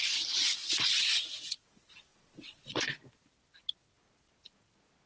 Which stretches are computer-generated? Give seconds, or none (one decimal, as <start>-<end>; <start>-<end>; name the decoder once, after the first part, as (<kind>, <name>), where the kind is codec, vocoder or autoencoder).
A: 0.6-1.6 (vocoder, Vocos); 2.1-2.8